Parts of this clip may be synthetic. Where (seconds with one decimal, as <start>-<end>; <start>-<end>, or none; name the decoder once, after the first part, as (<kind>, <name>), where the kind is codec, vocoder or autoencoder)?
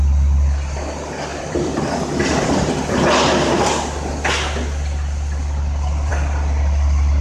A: 1.3-2.7 (vocoder, BigVGAN v2)